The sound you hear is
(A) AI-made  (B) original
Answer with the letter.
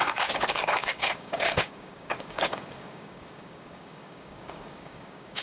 A